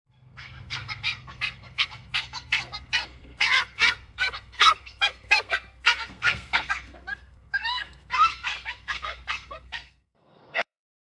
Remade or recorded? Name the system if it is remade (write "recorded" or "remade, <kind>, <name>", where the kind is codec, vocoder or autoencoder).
remade, codec, SNAC